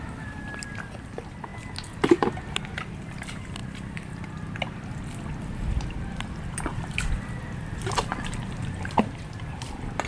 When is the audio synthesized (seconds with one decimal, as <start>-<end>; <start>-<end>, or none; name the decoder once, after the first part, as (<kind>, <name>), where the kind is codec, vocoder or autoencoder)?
3.6-5.8 (vocoder, BigVGAN v2); 6.7-7.4